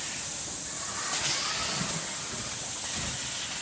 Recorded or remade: recorded